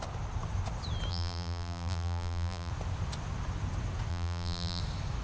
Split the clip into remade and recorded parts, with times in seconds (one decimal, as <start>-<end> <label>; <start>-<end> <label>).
0.0-1.1 recorded; 1.1-2.7 remade; 2.7-4.1 recorded; 4.1-4.8 remade; 4.8-5.2 recorded